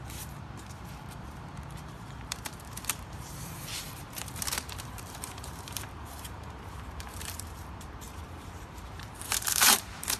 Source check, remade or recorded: remade